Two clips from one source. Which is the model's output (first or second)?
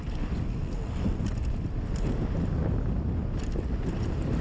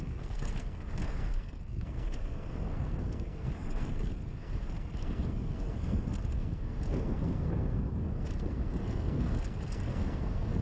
second